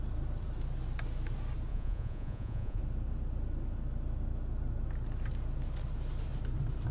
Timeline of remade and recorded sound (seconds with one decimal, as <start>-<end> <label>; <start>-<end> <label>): 0.0-1.7 recorded; 1.7-2.8 remade; 2.8-6.9 recorded